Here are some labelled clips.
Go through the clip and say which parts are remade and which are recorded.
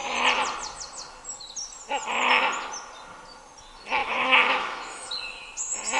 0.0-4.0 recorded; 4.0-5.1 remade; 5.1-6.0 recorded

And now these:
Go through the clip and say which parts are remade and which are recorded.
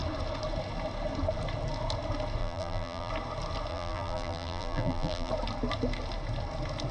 0.0-2.4 recorded; 2.4-3.1 remade; 3.1-3.7 recorded; 3.7-5.3 remade; 5.3-6.9 recorded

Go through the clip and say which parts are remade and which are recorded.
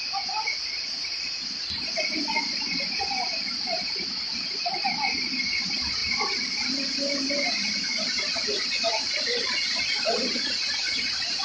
0.0-11.4 recorded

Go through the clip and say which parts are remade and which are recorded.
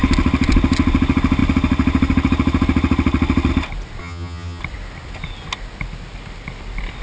0.0-4.0 recorded; 4.0-4.6 remade; 4.6-7.0 recorded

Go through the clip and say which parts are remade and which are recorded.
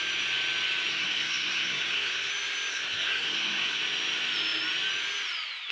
0.0-0.9 recorded; 0.9-2.3 remade; 2.3-2.7 recorded; 2.7-3.8 remade; 3.8-5.7 recorded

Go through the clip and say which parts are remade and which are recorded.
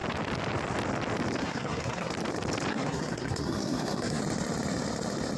0.0-1.4 recorded; 1.4-2.1 remade; 2.1-2.7 recorded; 2.7-4.2 remade; 4.2-5.4 recorded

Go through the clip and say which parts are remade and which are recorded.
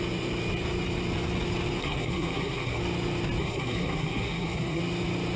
0.0-1.8 recorded; 1.8-2.8 remade; 2.8-3.4 recorded; 3.4-4.8 remade; 4.8-5.4 recorded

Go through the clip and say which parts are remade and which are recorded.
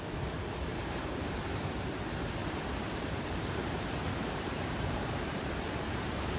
0.0-0.7 recorded; 0.7-1.3 remade; 1.3-2.4 recorded; 2.4-6.4 remade